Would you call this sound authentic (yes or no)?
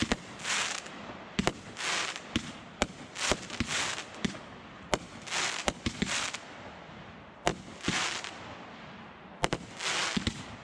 yes